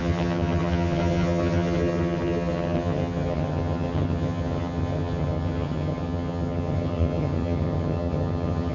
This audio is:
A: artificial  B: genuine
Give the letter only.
A